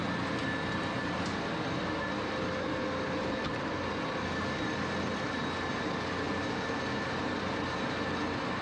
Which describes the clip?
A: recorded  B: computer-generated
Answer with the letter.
A